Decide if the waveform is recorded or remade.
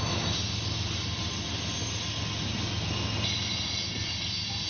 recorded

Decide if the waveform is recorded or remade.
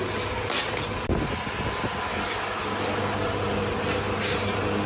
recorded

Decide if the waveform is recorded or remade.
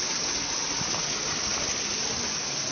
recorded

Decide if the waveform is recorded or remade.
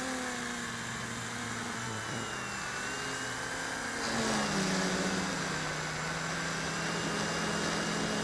recorded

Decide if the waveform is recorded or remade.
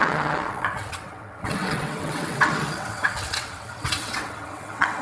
remade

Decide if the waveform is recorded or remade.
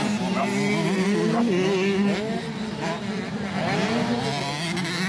recorded